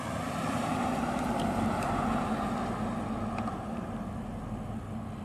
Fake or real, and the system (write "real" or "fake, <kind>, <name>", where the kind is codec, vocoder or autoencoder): real